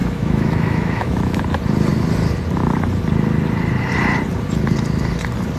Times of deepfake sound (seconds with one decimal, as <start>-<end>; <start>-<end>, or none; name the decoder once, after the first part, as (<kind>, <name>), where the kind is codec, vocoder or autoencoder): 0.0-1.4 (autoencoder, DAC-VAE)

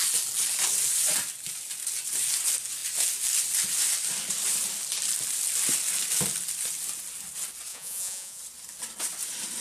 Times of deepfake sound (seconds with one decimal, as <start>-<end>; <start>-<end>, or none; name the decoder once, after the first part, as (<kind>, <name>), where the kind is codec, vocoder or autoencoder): 7.7-8.4 (vocoder, Vocos)

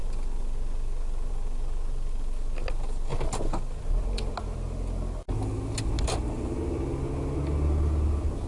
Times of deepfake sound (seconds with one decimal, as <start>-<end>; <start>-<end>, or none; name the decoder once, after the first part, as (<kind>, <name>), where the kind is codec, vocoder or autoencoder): none

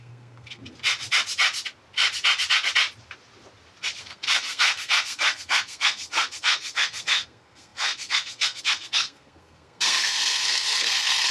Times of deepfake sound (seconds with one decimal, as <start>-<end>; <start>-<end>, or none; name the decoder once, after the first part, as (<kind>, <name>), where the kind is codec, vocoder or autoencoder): 0.0-0.6 (codec, SNAC); 4.0-11.3

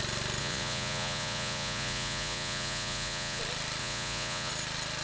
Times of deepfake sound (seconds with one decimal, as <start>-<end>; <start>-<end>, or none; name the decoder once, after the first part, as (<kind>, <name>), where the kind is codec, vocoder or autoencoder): 0.4-3.4 (vocoder, Vocos); 3.8-4.5

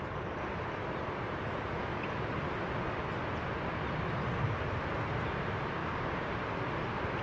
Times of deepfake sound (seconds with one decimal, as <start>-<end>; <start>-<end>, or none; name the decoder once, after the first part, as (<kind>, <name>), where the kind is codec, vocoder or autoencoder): 5.8-6.3 (codec, DAC)